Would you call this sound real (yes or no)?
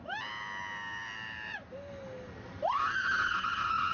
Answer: yes